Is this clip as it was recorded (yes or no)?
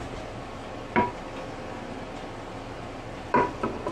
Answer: no